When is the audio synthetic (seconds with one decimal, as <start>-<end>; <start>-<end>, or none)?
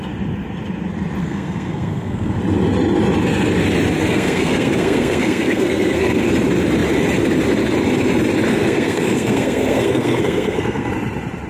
1.2-2.4; 4.0-6.3; 8.5-10.9